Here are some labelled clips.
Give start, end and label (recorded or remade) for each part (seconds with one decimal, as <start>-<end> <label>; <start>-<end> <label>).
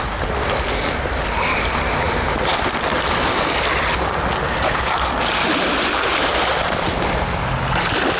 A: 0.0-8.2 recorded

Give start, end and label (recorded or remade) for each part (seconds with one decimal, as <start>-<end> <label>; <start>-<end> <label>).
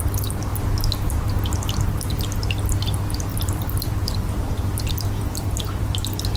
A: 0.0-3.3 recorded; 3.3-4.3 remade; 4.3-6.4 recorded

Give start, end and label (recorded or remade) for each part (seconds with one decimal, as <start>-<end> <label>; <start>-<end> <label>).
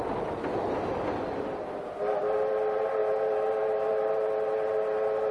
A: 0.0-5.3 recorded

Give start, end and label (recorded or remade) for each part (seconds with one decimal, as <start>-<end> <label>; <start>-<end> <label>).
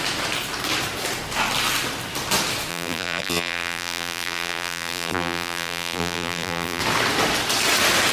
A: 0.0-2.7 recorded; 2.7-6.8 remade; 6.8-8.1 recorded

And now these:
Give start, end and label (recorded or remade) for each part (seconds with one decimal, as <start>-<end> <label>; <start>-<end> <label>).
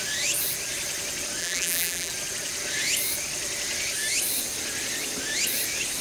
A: 0.0-1.4 recorded; 1.4-2.1 remade; 2.1-6.0 recorded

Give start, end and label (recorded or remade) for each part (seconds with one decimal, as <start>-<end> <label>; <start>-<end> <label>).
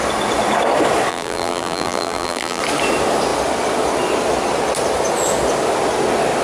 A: 0.0-1.1 recorded; 1.1-2.6 remade; 2.6-6.4 recorded